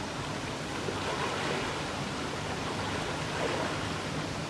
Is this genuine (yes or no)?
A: yes